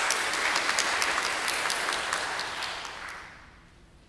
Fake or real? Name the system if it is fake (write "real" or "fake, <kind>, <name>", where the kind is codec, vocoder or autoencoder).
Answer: real